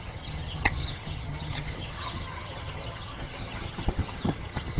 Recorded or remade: remade